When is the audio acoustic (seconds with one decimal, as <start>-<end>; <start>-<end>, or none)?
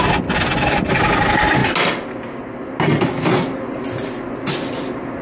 0.0-5.2